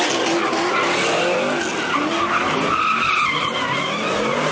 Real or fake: real